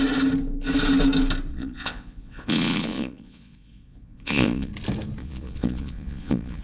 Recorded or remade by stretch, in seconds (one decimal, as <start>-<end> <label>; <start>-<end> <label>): 0.0-1.5 recorded; 1.5-4.7 remade; 4.7-5.2 recorded; 5.2-6.6 remade

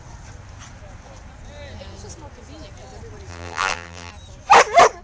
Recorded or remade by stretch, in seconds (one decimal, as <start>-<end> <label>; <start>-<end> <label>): 0.0-3.3 recorded; 3.3-4.1 remade; 4.1-5.0 recorded

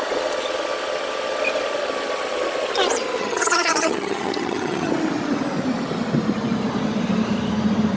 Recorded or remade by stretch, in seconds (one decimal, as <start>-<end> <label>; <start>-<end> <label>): 0.0-3.2 recorded; 3.2-4.9 remade; 4.9-8.0 recorded

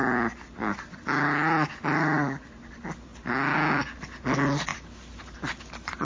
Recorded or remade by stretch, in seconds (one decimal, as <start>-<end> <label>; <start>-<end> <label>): 0.0-6.0 recorded

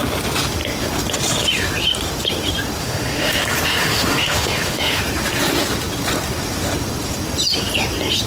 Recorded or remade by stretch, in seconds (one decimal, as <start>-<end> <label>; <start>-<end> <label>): 0.0-2.8 recorded; 2.8-3.4 remade; 3.4-3.8 recorded; 3.8-5.0 remade; 5.0-8.3 recorded

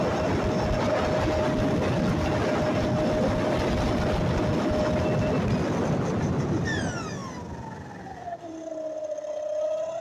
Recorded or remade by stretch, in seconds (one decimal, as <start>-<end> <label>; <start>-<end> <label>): 0.0-10.0 recorded

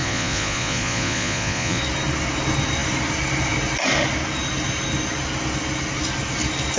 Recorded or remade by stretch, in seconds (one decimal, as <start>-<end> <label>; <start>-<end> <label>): 0.0-1.8 remade; 1.8-6.8 recorded

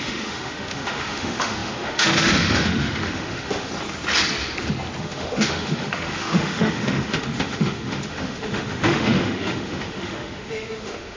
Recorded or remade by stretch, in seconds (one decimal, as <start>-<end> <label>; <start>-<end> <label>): 0.0-3.7 remade; 3.7-5.0 recorded; 5.0-11.2 remade